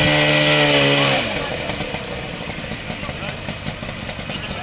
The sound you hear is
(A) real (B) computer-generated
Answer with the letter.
A